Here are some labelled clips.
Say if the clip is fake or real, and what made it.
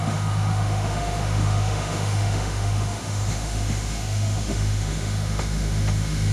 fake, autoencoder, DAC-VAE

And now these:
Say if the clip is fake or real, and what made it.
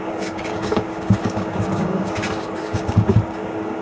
fake, codec, DAC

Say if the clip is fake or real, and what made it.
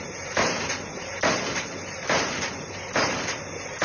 real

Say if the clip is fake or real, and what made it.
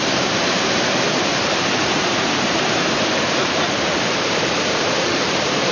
fake, vocoder, BigVGAN v2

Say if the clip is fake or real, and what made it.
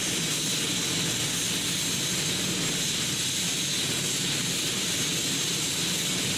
real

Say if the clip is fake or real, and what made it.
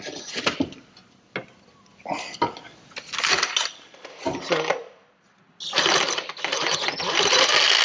real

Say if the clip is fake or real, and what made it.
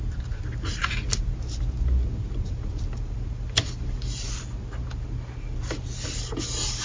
real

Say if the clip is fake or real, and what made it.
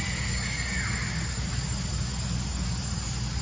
real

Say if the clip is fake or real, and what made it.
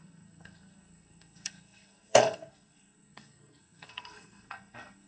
fake, codec, SNAC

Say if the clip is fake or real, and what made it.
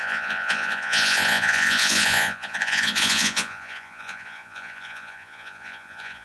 fake, vocoder, Vocos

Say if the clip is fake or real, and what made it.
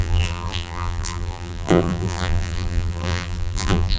fake, vocoder, BigVGAN v2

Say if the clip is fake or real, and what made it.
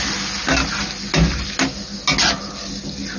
real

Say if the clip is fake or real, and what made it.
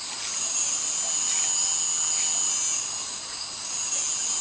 real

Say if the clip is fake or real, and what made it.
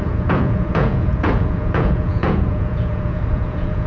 fake, vocoder, Vocos